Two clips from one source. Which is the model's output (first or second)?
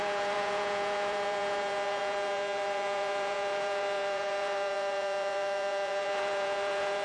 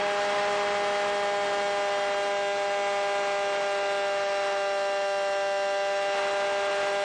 first